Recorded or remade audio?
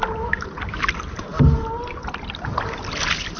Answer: recorded